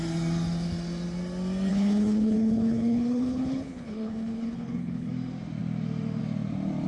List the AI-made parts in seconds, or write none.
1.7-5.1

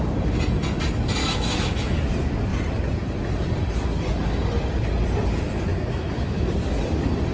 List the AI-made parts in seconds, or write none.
1.2-2.0; 5.7-6.5

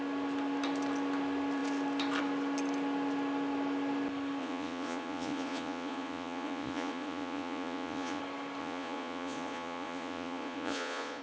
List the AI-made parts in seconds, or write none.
4.4-8.2; 8.6-11.2

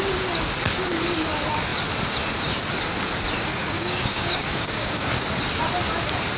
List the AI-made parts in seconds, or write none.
3.5-5.1

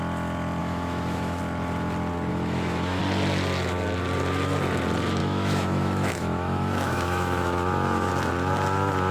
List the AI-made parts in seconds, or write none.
0.6-1.4; 2.3-3.0; 5.2-8.1